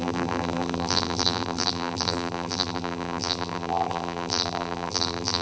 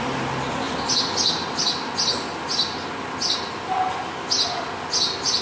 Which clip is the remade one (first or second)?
first